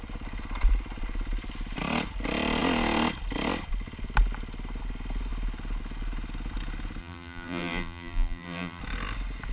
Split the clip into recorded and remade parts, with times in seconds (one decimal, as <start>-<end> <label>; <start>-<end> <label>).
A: 0.0-7.0 recorded; 7.0-8.8 remade; 8.8-9.5 recorded